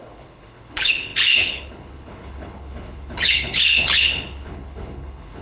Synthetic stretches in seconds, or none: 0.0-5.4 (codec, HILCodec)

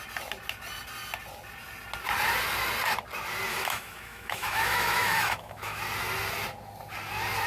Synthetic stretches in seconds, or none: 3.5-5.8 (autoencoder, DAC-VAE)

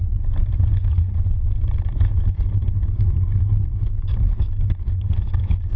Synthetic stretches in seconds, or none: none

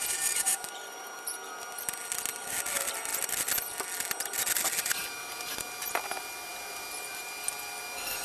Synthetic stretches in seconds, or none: none